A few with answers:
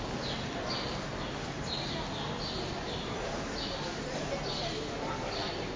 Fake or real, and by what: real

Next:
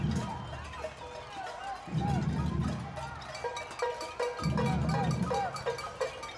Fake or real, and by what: real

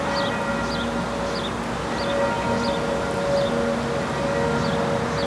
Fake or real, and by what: real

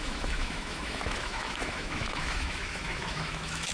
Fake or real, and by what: fake, autoencoder, DAC-VAE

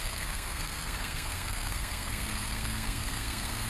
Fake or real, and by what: fake, codec, SNAC